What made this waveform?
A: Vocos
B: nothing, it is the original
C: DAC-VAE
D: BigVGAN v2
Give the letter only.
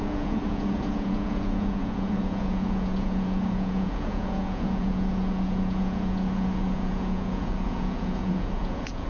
A